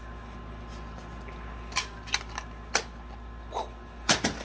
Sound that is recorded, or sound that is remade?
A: recorded